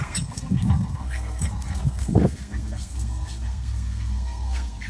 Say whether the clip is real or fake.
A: fake